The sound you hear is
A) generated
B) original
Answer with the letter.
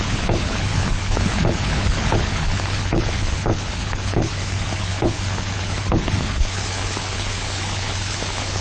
A